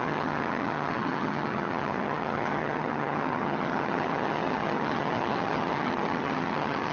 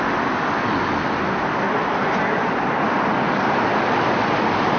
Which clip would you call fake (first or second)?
first